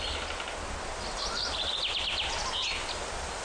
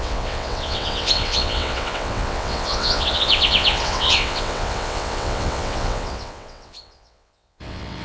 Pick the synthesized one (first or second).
second